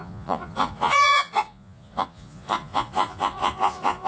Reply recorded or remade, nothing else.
remade